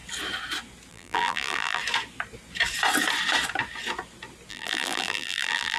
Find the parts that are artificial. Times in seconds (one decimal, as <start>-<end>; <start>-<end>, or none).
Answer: 0.9-1.8; 4.5-5.8